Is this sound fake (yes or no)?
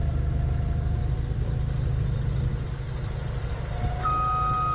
no